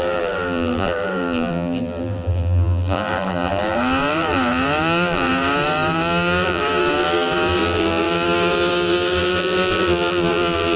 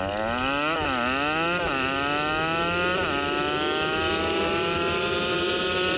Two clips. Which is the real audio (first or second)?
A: second